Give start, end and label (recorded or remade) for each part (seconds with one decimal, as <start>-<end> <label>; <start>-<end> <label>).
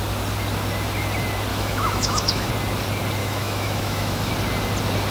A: 0.0-1.5 recorded; 1.5-2.5 remade; 2.5-3.2 recorded; 3.2-4.3 remade; 4.3-5.1 recorded